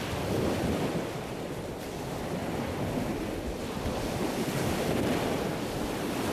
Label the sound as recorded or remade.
recorded